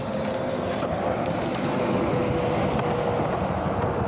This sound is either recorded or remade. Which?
recorded